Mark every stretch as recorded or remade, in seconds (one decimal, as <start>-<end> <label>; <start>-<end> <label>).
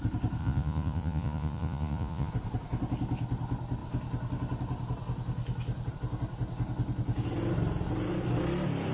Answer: 0.0-0.4 recorded; 0.4-2.3 remade; 2.3-8.9 recorded